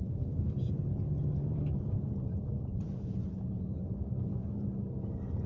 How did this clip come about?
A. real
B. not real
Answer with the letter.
B